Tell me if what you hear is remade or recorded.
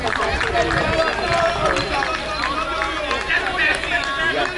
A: recorded